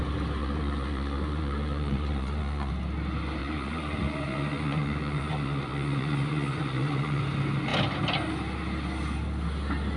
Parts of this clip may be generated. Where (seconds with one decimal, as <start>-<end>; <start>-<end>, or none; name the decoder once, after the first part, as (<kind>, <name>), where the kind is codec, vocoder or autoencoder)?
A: 0.4-2.7 (vocoder, Vocos); 3.4-7.2